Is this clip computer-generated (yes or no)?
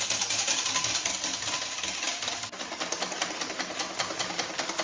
no